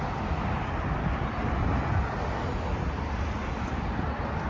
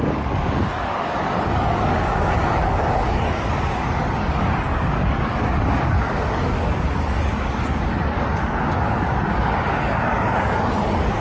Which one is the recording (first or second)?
first